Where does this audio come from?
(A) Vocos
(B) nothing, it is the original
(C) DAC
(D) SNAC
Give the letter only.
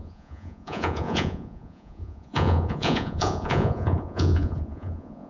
A